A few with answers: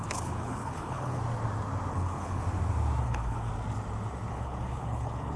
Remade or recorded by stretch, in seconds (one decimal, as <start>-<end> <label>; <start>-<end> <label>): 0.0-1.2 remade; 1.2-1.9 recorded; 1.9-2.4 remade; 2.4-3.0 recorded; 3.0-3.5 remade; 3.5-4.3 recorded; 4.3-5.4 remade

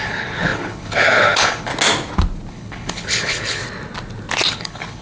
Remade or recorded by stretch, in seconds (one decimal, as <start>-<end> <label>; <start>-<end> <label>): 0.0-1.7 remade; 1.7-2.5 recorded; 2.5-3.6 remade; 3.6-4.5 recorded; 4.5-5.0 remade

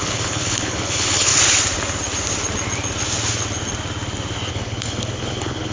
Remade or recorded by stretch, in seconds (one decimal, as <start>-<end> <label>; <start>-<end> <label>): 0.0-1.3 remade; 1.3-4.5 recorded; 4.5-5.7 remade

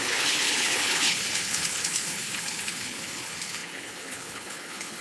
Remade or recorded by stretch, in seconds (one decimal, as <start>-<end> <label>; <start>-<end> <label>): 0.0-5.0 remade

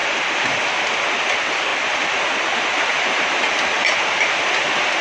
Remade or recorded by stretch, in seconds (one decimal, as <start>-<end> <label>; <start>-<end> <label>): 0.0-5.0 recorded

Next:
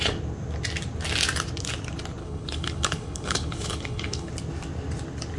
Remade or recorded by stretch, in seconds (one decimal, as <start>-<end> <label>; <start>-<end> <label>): 0.0-2.2 recorded; 2.2-4.3 remade; 4.3-5.4 recorded

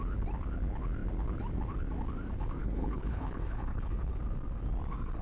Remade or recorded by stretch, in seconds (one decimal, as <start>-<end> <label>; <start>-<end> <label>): 0.0-2.6 recorded; 2.6-4.2 remade; 4.2-5.2 recorded

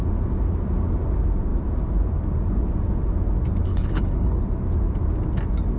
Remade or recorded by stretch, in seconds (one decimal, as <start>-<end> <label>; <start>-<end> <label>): 0.0-3.7 recorded; 3.7-4.4 remade; 4.4-5.8 recorded